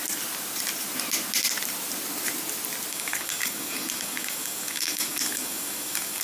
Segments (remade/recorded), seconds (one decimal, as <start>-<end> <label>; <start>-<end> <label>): 0.0-2.9 recorded; 2.9-6.2 remade